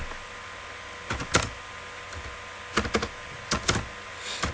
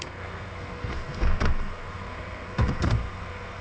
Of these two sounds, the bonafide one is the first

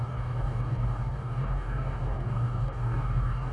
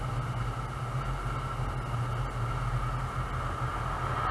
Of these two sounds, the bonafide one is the second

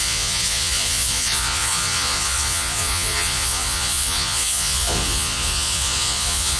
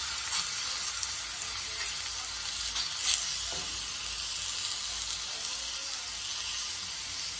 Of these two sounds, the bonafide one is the second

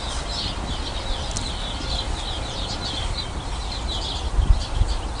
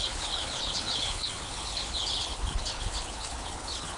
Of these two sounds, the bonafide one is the first